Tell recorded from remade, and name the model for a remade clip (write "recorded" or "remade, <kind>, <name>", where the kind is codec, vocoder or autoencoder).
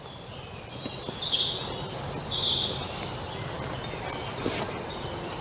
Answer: recorded